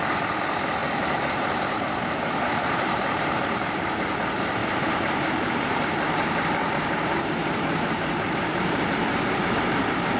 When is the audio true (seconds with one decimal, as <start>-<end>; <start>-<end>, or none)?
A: 0.0-0.8; 3.7-4.6; 9.5-10.2